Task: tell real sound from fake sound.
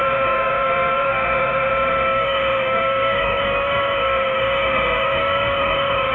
fake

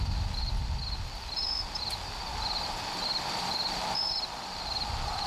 real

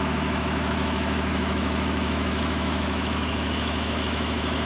fake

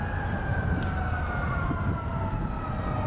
real